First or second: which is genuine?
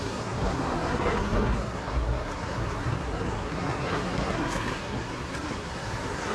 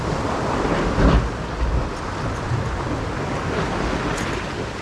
second